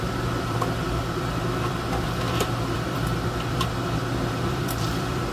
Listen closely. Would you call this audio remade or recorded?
remade